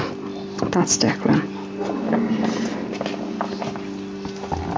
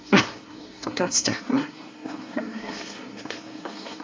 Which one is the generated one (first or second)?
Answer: second